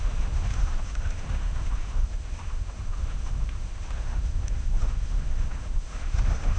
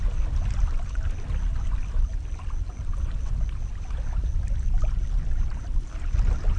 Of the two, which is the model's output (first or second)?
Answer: first